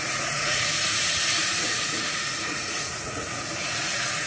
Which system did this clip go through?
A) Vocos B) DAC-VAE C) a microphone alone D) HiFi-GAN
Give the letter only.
A